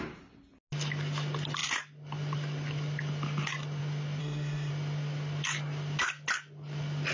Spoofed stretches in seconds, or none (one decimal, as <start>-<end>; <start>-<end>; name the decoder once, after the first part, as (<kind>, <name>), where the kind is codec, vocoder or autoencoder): 4.2-4.7 (codec, SNAC)